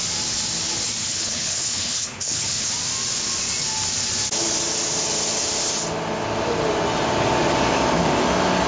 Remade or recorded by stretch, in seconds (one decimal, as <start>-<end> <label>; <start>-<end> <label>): 0.0-1.0 recorded; 1.0-2.7 remade; 2.7-8.7 recorded